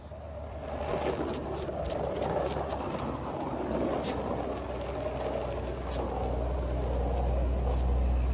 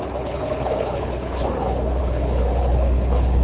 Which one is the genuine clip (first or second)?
first